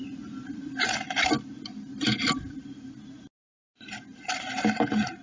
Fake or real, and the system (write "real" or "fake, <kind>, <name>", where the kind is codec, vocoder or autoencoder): real